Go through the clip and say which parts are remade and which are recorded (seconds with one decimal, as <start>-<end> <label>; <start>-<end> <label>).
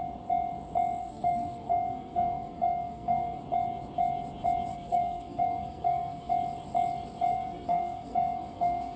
0.0-1.0 recorded; 1.0-3.4 remade; 3.4-4.7 recorded; 4.7-6.3 remade; 6.3-7.3 recorded; 7.3-9.0 remade